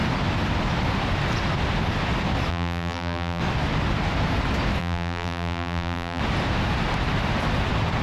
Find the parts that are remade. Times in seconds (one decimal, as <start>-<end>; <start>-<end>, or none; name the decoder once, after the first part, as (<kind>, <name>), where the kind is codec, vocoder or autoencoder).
2.5-3.4 (vocoder, BigVGAN v2); 4.8-6.2